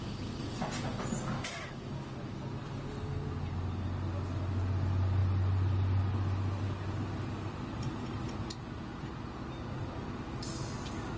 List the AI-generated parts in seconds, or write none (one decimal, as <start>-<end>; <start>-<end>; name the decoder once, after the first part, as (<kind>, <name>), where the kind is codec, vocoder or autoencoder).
none